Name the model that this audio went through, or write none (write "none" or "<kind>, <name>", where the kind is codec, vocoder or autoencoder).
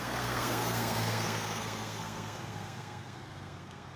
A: codec, SNAC